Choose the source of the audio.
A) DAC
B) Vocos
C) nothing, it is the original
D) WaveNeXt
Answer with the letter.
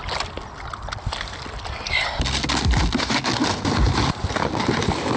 C